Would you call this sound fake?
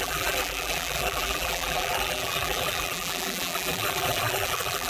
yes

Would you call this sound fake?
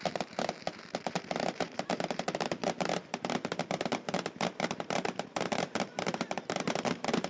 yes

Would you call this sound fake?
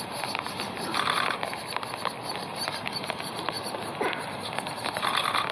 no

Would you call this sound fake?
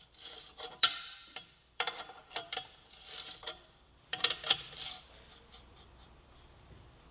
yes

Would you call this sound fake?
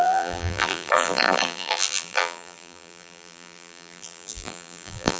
yes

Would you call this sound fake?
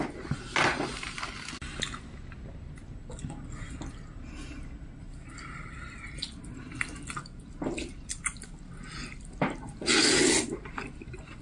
no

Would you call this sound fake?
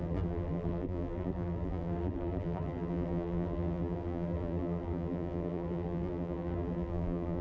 yes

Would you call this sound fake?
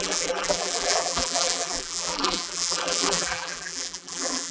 yes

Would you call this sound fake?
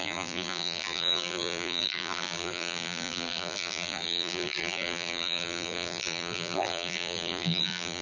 yes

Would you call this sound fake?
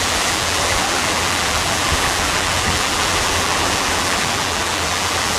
yes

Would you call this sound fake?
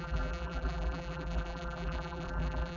yes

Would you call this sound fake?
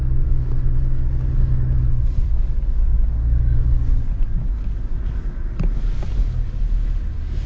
no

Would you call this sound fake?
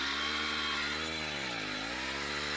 no